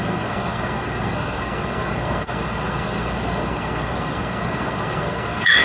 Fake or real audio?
fake